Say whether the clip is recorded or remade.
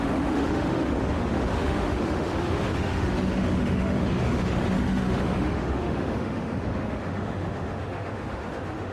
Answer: remade